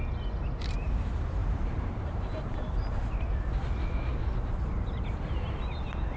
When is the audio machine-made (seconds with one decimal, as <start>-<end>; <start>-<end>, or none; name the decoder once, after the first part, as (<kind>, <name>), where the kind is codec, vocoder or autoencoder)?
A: 1.4-3.0 (vocoder, BigVGAN v2); 4.1-5.6